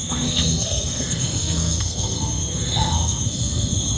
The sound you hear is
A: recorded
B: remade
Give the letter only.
B